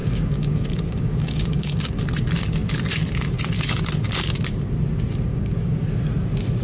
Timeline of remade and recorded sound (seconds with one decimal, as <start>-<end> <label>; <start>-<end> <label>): 0.0-2.0 remade; 2.0-5.3 recorded; 5.3-5.9 remade; 5.9-6.6 recorded